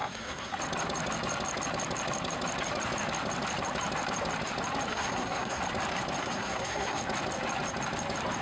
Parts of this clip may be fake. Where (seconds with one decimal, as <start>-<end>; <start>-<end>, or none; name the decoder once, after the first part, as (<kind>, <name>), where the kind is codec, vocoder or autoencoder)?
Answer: 0.0-0.5 (codec, SNAC); 4.9-5.6; 6.2-7.0